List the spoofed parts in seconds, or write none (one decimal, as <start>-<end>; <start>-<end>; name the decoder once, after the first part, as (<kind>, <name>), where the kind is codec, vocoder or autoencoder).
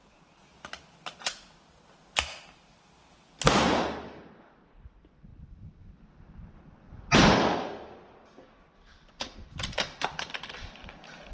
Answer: none